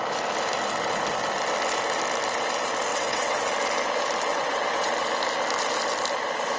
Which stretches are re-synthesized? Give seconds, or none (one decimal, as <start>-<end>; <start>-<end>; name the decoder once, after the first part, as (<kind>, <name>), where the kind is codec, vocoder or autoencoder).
2.9-3.5 (vocoder, WaveNeXt); 4.3-4.9